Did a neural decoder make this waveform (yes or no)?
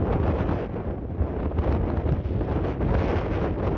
no